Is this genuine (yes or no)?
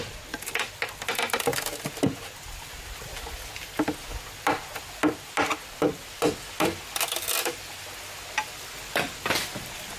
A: yes